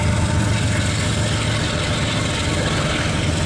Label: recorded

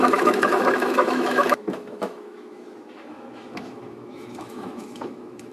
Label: remade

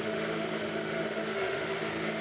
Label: remade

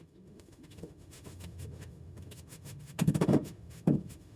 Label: remade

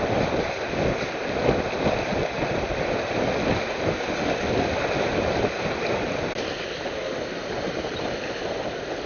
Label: recorded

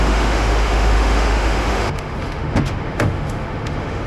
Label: remade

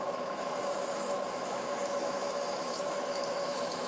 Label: remade